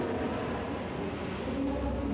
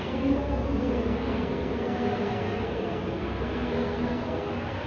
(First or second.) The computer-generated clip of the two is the second